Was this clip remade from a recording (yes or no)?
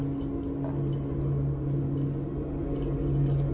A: no